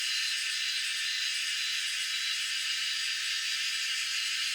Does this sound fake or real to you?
real